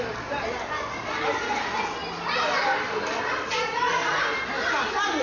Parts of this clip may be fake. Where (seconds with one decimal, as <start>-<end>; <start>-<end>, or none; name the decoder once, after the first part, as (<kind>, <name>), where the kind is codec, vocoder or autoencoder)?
none